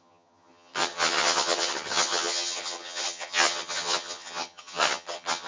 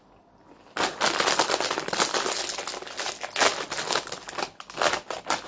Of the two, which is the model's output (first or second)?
first